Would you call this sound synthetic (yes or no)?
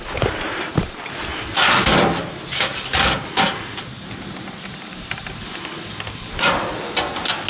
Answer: no